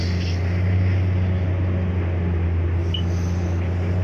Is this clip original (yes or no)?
yes